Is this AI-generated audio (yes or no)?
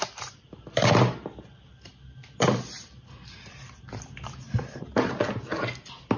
no